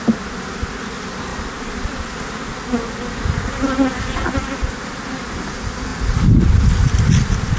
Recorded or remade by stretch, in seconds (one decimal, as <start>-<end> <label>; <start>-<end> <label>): 0.0-1.3 remade; 1.3-5.5 recorded; 5.5-5.9 remade; 5.9-7.1 recorded; 7.1-7.6 remade